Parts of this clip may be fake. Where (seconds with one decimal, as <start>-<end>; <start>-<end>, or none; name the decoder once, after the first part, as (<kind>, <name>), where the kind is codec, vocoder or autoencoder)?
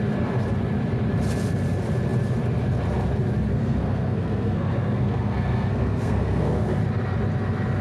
3.5-6.8 (codec, SNAC)